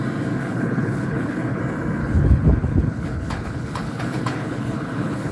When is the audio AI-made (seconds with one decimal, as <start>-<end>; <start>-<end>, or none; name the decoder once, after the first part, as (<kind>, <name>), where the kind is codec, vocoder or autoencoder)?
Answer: 0.4-1.6 (codec, HILCodec); 2.0-5.3